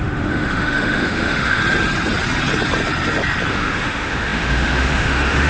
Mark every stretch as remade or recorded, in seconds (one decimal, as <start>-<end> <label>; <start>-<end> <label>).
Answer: 0.0-1.6 remade; 1.6-3.5 recorded; 3.5-5.5 remade